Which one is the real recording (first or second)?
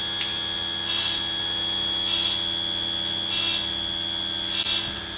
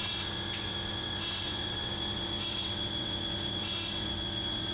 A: first